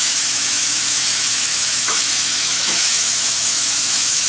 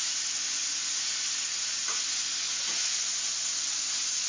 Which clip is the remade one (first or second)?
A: first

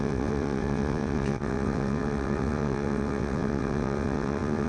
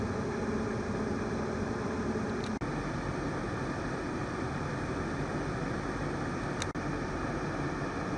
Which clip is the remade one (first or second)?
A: first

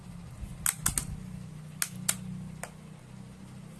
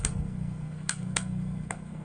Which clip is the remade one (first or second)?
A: second